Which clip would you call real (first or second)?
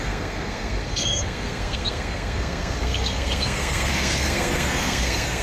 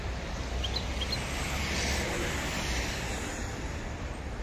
second